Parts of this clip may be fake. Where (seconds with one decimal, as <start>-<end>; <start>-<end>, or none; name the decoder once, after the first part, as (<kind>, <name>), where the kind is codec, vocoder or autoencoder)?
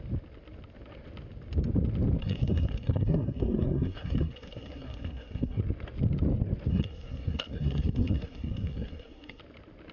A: 2.2-5.6 (codec, SNAC); 6.7-9.4